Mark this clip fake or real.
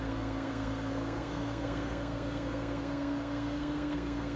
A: fake